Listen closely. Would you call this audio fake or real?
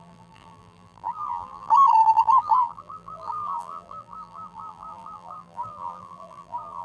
fake